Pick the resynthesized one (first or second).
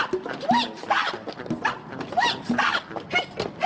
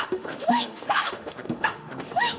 second